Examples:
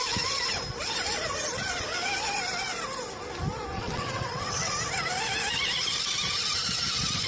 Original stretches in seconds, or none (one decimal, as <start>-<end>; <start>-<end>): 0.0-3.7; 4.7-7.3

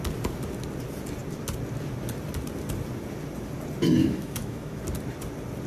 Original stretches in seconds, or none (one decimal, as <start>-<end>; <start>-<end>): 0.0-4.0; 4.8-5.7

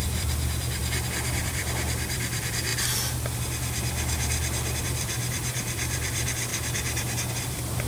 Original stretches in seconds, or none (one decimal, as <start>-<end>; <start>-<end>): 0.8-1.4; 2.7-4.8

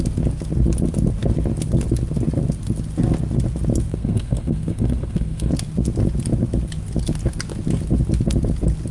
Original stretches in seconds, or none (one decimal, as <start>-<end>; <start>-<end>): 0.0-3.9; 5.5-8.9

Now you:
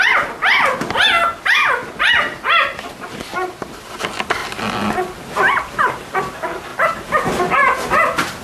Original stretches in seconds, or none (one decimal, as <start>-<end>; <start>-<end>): 0.0-8.4

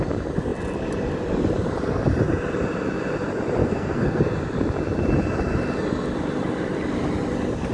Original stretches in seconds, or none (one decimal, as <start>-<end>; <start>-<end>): 0.0-3.6; 4.2-7.7